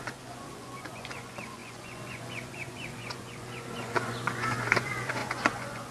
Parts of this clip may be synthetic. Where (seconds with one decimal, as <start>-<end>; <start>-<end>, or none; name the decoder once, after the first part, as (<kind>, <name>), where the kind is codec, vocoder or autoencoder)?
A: 0.0-5.9 (vocoder, Vocos)